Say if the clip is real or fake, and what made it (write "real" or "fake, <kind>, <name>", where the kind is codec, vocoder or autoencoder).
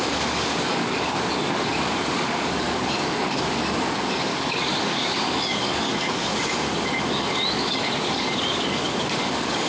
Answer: fake, codec, DAC